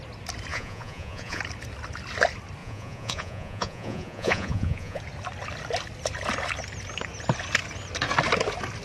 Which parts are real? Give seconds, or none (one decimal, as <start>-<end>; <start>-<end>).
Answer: 0.0-0.5; 1.4-2.6; 5.0-8.8